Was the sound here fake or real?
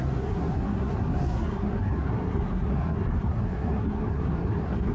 fake